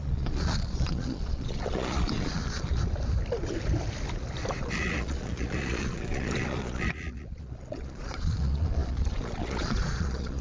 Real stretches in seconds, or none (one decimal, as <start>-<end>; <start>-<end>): 2.8-4.6